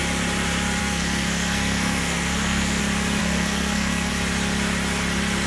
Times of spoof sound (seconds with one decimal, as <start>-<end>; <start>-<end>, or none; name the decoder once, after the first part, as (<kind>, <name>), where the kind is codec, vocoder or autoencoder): 0.8-2.8 (codec, SNAC); 3.2-4.1